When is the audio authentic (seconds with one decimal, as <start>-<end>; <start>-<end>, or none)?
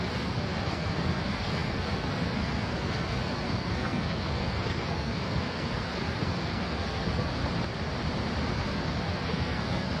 7.4-8.5